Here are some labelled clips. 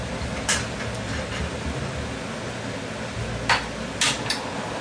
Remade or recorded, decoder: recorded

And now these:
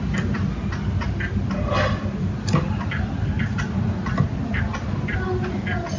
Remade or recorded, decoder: recorded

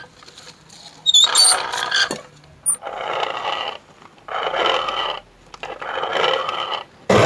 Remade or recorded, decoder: recorded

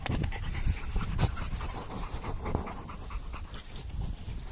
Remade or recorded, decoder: recorded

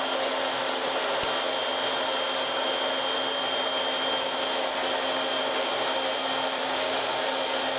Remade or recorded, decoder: recorded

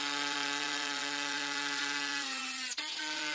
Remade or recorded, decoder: remade, vocoder, Vocos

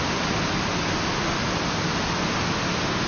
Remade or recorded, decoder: recorded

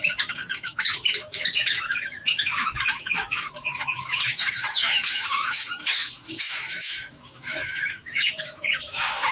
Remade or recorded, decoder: remade, autoencoder, DAC-VAE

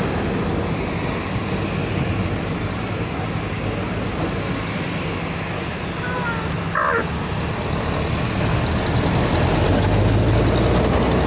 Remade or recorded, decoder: recorded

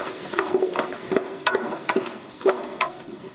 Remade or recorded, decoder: remade, codec, SNAC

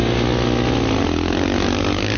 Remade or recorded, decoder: recorded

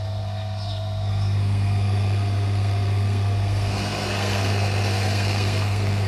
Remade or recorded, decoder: remade, codec, SNAC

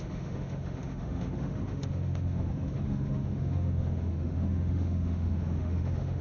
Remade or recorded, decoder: remade, autoencoder, DAC-VAE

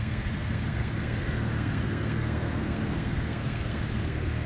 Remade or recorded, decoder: remade, codec, SNAC